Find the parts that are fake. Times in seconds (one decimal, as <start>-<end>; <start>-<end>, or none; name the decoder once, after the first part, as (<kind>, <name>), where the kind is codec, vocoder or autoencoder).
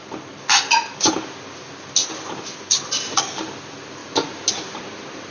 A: none